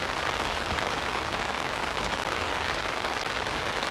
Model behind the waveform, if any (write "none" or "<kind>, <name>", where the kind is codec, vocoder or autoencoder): codec, DAC